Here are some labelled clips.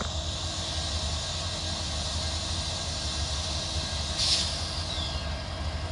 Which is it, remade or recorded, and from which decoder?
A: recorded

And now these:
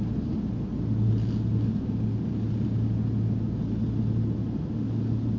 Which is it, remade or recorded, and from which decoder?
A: recorded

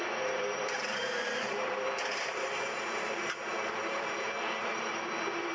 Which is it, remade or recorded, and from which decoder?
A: remade, vocoder, BigVGAN v2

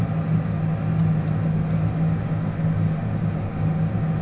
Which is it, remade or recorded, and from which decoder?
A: recorded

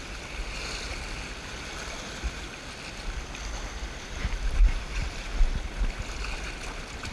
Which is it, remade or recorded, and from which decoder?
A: recorded